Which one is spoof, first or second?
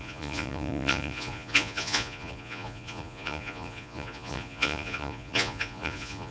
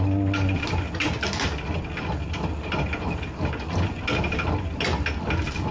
first